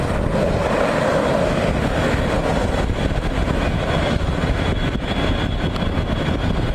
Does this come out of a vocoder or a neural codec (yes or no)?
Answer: no